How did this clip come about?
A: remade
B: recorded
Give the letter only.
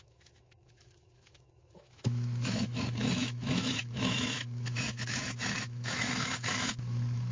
A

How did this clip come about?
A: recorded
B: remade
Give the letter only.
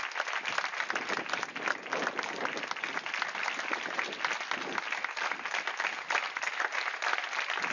A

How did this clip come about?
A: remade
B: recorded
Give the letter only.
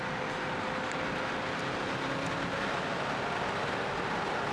B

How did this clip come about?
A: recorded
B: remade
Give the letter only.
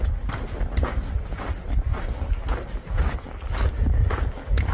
A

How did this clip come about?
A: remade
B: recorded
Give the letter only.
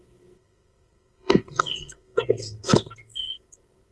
A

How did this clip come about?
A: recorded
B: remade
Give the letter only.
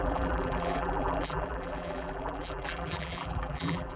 B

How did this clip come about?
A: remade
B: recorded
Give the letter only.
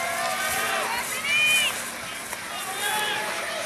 B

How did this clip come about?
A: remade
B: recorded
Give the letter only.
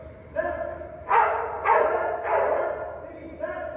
B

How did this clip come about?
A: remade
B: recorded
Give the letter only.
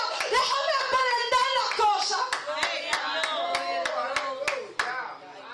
B